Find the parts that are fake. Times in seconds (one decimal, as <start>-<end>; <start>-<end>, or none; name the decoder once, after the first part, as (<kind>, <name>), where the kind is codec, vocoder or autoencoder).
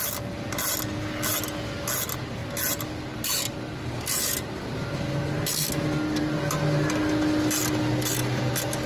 none